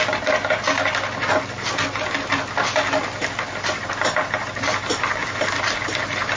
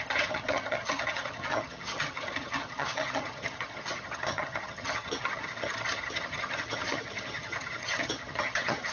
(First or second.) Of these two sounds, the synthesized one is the second